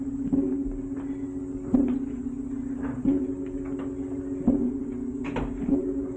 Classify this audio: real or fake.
real